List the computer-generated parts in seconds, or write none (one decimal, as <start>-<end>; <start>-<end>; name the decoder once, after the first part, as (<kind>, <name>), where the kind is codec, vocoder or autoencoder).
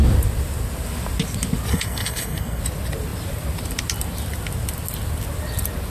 1.7-2.6 (codec, SNAC)